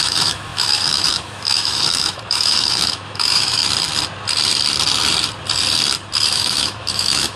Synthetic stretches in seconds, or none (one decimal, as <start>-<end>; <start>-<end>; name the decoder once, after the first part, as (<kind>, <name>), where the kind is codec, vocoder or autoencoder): 0.0-3.6 (autoencoder, DAC-VAE); 6.3-7.4